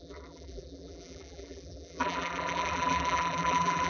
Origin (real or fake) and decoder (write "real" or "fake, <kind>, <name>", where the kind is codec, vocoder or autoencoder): fake, vocoder, BigVGAN v2